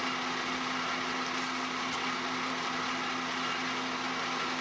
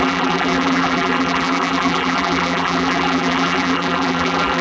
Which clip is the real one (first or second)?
first